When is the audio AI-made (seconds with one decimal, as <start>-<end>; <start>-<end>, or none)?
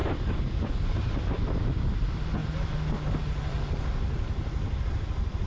none